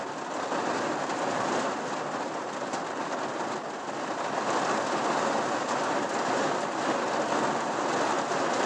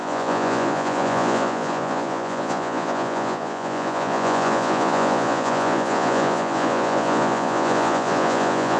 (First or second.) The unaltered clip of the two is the first